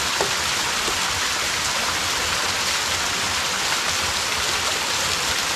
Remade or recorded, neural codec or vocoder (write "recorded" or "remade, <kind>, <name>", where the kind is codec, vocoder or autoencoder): recorded